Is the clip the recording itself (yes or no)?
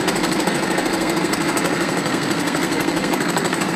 no